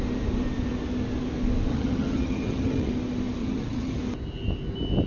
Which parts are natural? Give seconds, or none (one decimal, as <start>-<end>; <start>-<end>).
0.0-1.7; 2.9-3.4; 4.0-5.1